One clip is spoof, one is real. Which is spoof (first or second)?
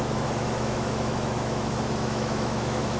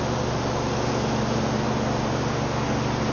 first